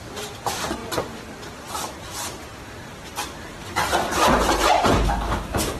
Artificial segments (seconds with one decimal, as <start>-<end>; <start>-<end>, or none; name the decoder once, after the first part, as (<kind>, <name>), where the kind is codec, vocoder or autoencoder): none